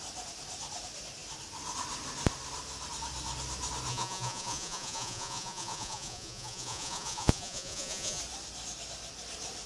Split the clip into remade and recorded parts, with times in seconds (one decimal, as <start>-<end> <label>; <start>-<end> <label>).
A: 0.0-3.9 recorded; 3.9-8.2 remade; 8.2-9.7 recorded